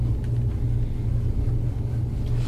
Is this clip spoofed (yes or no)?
no